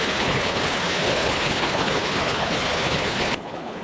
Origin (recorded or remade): remade